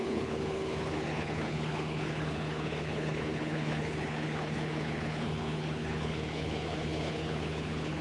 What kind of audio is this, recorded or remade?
remade